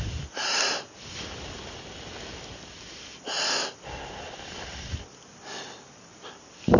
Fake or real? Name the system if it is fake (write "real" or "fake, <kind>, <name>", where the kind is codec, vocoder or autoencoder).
real